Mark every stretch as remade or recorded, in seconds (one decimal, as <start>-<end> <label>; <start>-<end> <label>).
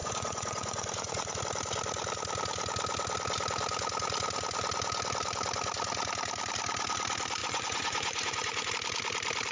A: 0.0-1.4 remade; 1.4-7.4 recorded; 7.4-8.7 remade; 8.7-9.5 recorded